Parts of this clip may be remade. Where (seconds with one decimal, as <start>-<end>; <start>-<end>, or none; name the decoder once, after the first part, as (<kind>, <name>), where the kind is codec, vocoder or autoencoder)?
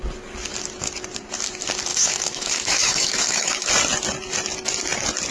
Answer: 1.9-3.7 (autoencoder, DAC-VAE)